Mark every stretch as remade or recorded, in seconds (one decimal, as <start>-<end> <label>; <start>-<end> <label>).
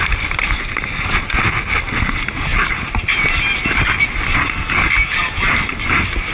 0.0-6.3 recorded